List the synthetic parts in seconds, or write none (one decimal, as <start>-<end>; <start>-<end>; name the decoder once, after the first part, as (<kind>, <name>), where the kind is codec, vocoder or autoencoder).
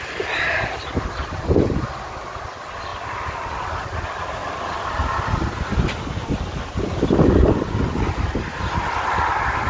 0.0-2.9 (vocoder, BigVGAN v2); 3.5-4.4; 8.6-9.7